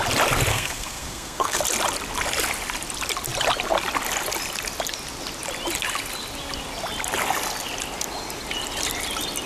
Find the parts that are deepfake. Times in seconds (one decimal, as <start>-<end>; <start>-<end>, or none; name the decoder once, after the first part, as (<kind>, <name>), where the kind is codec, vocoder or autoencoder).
0.5-1.6 (codec, SNAC)

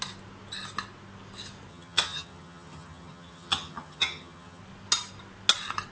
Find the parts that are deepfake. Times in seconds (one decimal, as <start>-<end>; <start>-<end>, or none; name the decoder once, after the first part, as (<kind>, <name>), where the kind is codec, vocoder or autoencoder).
1.7-4.6 (vocoder, HiFi-GAN)

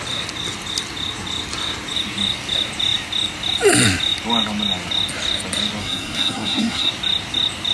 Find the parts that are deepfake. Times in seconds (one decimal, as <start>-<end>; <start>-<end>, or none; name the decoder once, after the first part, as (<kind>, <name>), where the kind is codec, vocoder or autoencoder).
5.8-6.9 (codec, SNAC)

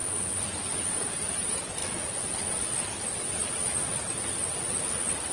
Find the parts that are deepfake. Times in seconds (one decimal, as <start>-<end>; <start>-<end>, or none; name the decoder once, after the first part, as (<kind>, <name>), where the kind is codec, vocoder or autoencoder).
0.9-1.8 (vocoder, Vocos)